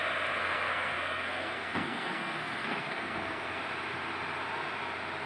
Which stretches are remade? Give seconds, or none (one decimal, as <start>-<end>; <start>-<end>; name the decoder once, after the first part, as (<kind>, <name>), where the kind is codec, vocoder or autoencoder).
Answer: 0.4-3.6 (codec, SNAC)